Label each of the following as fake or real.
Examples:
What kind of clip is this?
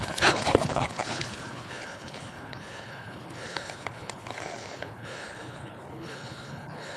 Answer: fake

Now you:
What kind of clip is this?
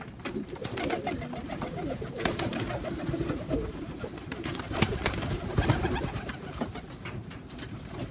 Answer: fake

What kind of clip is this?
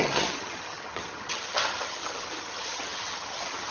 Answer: fake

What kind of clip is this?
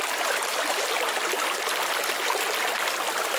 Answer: real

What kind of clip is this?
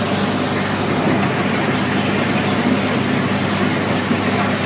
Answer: real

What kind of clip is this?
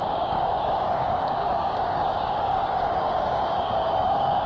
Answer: fake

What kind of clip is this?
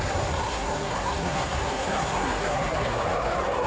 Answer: fake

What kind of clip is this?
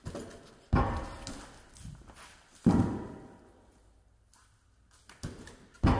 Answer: real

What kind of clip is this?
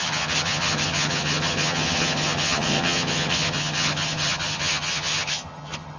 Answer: fake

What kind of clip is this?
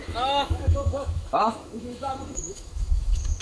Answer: fake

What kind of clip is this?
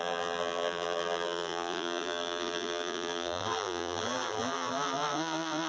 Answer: fake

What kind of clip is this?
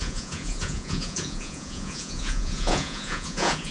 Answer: fake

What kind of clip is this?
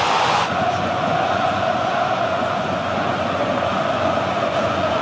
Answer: fake